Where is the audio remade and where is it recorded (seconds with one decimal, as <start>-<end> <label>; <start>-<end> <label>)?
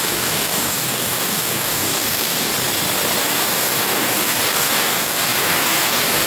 0.0-2.5 remade; 2.5-3.2 recorded; 3.2-6.3 remade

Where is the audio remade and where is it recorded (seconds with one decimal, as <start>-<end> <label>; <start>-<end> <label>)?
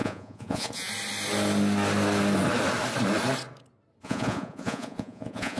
0.0-0.9 remade; 0.9-4.0 recorded; 4.0-5.6 remade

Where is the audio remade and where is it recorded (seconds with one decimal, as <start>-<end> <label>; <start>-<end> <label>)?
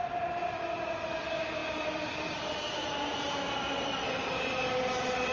0.0-5.3 recorded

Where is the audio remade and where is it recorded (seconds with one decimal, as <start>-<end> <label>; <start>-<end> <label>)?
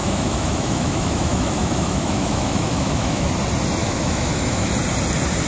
0.0-3.3 remade; 3.3-3.8 recorded; 3.8-4.7 remade; 4.7-5.5 recorded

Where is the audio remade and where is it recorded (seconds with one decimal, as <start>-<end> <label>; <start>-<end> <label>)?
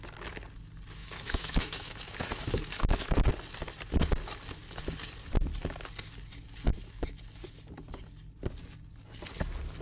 0.0-1.0 recorded; 1.0-3.3 remade; 3.3-9.8 recorded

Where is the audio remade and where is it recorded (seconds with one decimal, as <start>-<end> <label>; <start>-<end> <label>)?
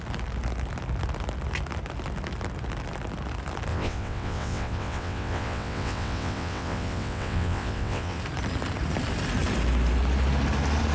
0.0-3.7 recorded; 3.7-8.2 remade; 8.2-10.9 recorded